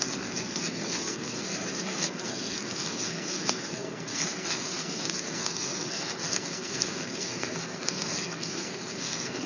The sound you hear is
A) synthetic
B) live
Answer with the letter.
A